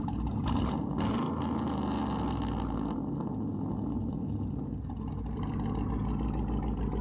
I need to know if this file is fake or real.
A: real